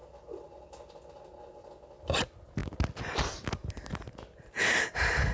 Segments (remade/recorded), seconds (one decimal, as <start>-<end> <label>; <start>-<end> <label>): 0.0-0.9 remade; 0.9-5.3 recorded